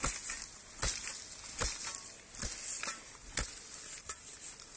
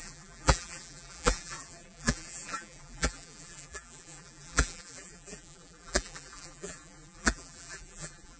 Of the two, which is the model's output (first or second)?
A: second